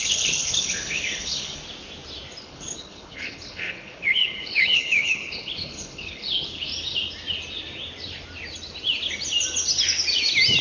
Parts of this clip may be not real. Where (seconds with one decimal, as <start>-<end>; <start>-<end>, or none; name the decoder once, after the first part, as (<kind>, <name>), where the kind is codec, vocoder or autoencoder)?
0.0-1.6 (codec, HILCodec); 2.4-6.7